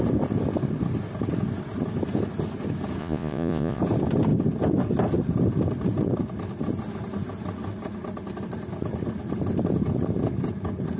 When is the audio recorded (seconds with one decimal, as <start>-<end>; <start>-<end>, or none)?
0.0-3.0; 3.8-11.0